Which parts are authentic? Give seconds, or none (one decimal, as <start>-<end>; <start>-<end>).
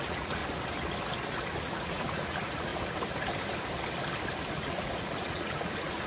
0.4-1.6; 2.7-4.5